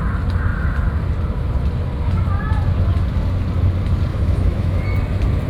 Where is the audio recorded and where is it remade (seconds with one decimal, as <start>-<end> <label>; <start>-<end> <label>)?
0.0-4.1 recorded; 4.1-4.8 remade; 4.8-5.5 recorded